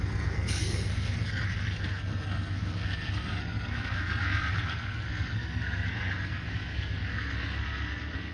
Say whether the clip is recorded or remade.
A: remade